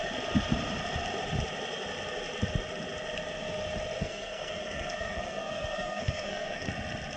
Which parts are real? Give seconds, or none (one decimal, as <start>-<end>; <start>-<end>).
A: 0.0-4.0; 6.7-7.2